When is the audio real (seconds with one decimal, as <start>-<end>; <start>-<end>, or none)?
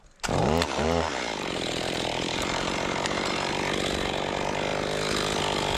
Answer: 0.0-0.4; 3.5-5.8